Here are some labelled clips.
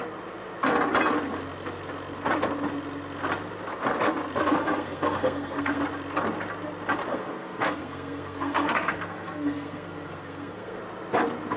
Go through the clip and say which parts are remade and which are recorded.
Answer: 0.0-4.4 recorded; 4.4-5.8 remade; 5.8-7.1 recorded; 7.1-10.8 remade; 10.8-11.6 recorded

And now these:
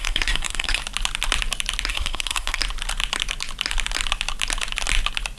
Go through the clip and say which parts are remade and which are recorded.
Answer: 0.0-0.8 remade; 0.8-1.9 recorded; 1.9-2.6 remade; 2.6-5.4 recorded